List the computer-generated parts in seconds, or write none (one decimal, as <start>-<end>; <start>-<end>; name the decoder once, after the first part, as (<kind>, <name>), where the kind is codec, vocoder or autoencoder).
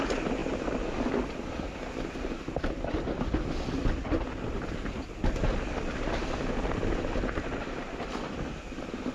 none